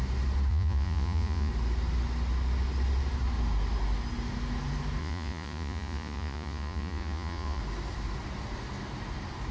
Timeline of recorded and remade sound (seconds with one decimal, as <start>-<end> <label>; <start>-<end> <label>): 0.0-0.5 recorded; 0.5-1.5 remade; 1.5-5.0 recorded; 5.0-7.6 remade; 7.6-9.5 recorded